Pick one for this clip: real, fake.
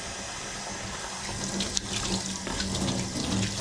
real